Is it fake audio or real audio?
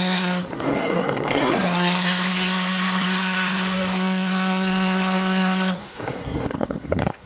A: fake